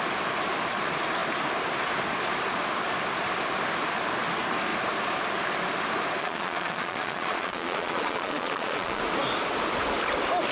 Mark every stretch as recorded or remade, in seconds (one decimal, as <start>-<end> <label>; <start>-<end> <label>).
0.0-6.2 recorded; 6.2-9.0 remade; 9.0-10.5 recorded